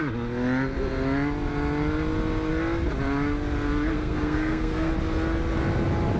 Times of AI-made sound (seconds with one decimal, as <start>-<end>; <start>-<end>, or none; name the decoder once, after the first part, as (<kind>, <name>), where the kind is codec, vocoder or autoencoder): 3.9-4.9 (codec, SNAC)